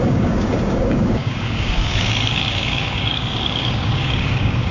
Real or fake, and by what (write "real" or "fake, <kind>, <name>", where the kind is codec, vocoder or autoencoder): fake, codec, DAC